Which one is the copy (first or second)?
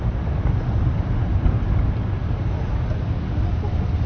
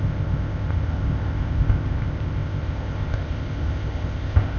second